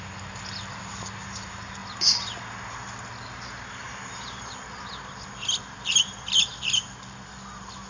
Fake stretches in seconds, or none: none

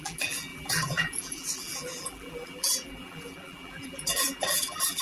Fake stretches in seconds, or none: 0.0-5.0